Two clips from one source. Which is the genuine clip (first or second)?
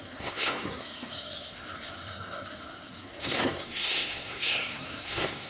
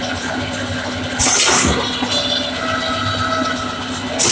second